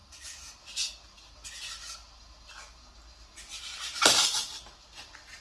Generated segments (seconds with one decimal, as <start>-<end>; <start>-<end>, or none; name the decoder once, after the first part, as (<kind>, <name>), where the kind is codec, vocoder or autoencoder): none